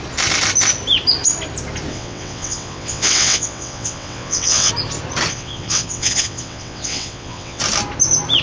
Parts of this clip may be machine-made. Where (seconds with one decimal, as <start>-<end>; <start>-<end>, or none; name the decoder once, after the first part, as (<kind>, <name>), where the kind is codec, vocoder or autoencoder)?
1.9-4.7 (vocoder, WaveNeXt); 5.3-7.6